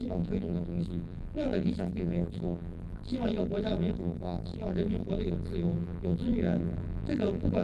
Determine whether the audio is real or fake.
fake